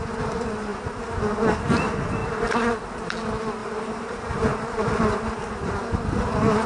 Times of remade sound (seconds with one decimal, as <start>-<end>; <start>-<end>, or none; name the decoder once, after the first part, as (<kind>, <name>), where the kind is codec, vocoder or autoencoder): 0.7-1.2 (vocoder, BigVGAN v2); 3.6-5.0